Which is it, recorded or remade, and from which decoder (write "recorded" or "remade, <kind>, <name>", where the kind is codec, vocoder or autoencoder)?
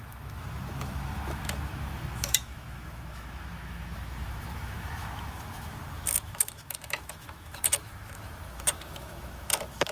remade, autoencoder, DAC-VAE